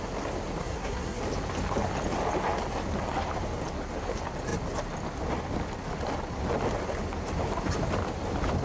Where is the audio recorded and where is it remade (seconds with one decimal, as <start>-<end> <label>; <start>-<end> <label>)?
0.0-0.6 recorded; 0.6-1.2 remade; 1.2-8.6 recorded